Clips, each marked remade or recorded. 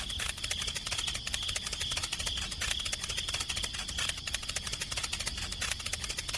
recorded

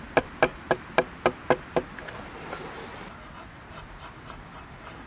recorded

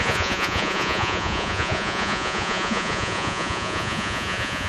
remade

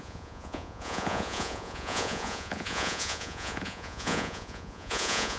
remade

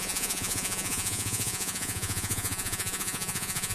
remade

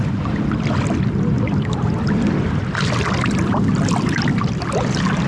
recorded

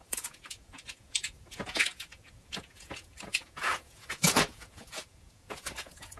remade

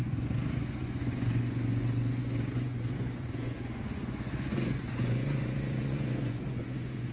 remade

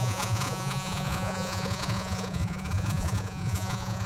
remade